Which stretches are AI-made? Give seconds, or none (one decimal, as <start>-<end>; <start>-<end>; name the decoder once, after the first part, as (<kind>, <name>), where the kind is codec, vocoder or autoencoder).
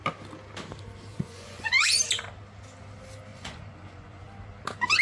1.1-2.0 (vocoder, Vocos); 3.3-4.2